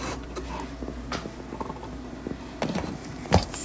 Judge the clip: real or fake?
real